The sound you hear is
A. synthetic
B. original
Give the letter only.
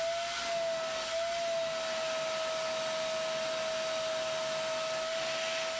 B